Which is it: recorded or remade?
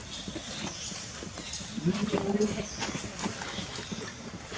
recorded